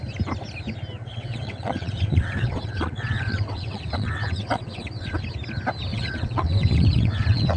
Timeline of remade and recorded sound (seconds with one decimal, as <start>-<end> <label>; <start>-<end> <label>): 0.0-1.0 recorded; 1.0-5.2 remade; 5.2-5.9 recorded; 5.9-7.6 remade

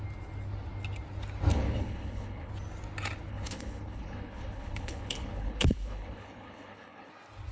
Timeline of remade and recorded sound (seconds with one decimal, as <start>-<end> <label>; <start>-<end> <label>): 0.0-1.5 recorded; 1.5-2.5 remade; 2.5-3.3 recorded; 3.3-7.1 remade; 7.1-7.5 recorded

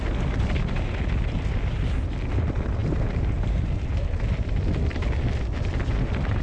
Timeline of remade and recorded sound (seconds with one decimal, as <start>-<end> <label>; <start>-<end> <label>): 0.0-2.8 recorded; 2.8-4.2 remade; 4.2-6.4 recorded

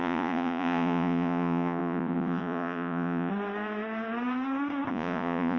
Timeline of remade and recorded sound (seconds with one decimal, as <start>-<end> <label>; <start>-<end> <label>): 0.0-3.3 remade; 3.3-4.9 recorded; 4.9-5.6 remade

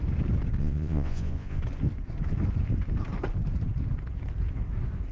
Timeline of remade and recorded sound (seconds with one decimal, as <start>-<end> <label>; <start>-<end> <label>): 0.0-0.6 recorded; 0.6-1.6 remade; 1.6-5.1 recorded

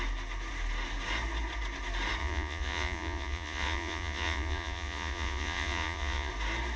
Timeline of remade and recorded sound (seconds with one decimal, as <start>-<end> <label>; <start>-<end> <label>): 0.0-2.2 recorded; 2.2-6.3 remade; 6.3-6.8 recorded

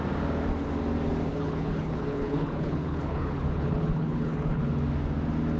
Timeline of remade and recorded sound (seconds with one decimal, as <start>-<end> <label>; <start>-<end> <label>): 0.0-1.3 recorded; 1.3-4.7 remade; 4.7-5.6 recorded